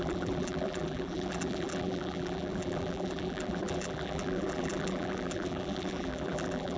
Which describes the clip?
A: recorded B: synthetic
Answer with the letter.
B